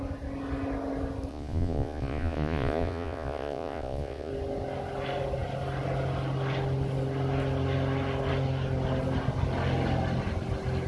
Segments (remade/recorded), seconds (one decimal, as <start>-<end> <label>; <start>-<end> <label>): 0.0-1.3 recorded; 1.3-4.3 remade; 4.3-10.9 recorded